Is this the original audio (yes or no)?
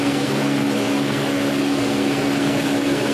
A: no